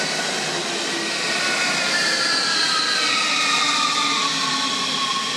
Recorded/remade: remade